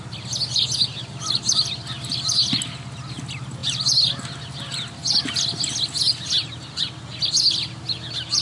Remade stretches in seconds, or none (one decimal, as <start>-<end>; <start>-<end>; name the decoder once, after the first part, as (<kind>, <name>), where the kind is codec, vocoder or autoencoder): none